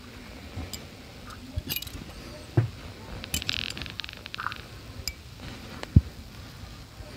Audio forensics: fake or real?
real